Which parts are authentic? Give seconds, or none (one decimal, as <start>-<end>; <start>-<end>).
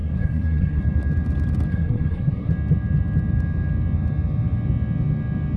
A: 0.8-1.7; 2.5-5.6